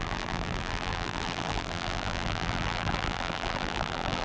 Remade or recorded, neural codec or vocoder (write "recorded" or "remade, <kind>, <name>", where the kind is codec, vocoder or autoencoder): remade, vocoder, BigVGAN v2